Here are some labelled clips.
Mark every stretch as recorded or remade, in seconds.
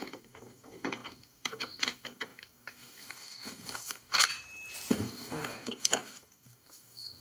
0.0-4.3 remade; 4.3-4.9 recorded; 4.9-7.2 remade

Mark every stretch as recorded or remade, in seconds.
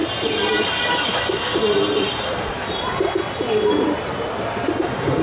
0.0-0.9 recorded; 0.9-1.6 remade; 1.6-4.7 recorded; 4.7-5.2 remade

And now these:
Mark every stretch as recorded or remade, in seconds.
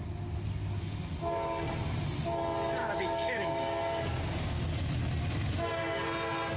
0.0-2.8 recorded; 2.8-4.7 remade; 4.7-6.6 recorded